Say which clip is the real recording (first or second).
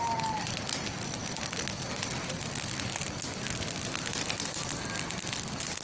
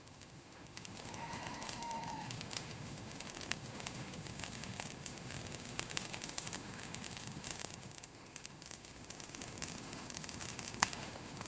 first